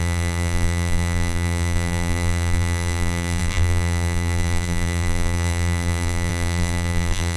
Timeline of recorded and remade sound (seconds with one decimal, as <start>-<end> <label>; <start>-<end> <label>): 0.0-7.4 remade